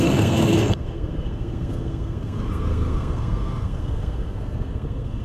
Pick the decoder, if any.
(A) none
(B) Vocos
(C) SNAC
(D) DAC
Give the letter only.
C